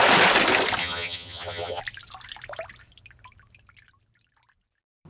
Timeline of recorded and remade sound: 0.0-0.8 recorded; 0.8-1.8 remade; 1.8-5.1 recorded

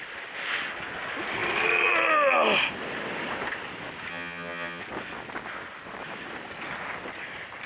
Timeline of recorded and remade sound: 0.0-4.1 recorded; 4.1-4.8 remade; 4.8-7.7 recorded

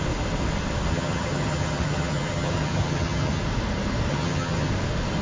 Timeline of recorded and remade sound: 0.0-0.9 recorded; 0.9-3.4 remade; 3.4-4.1 recorded; 4.1-4.7 remade; 4.7-5.2 recorded

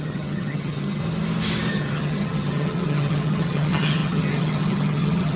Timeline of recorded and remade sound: 0.0-1.0 remade; 1.0-1.7 recorded; 1.7-5.4 remade

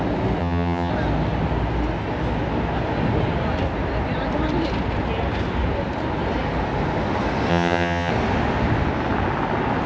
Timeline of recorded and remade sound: 0.0-0.4 recorded; 0.4-0.9 remade; 0.9-7.5 recorded; 7.5-8.1 remade; 8.1-9.9 recorded